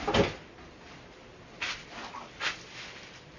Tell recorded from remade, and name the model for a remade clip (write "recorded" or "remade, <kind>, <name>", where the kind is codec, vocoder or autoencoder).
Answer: recorded